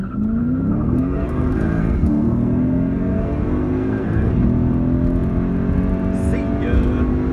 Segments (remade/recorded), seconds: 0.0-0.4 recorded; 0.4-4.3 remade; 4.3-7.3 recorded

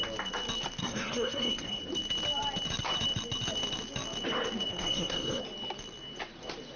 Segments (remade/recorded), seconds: 0.0-0.8 recorded; 0.8-1.8 remade; 1.8-4.7 recorded; 4.7-5.4 remade; 5.4-6.8 recorded

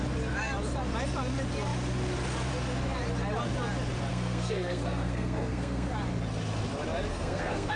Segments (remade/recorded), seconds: 0.0-4.1 recorded; 4.1-5.9 remade; 5.9-7.1 recorded; 7.1-7.8 remade

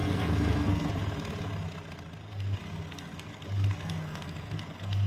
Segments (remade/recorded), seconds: 0.0-0.9 remade; 0.9-2.2 recorded; 2.2-5.1 remade

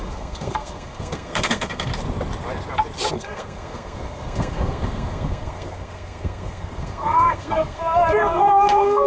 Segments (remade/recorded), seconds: 0.0-1.9 remade; 1.9-3.1 recorded; 3.1-9.1 remade